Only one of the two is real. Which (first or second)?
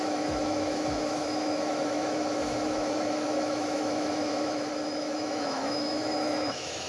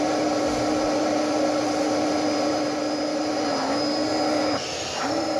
second